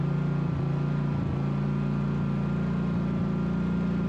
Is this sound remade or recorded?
recorded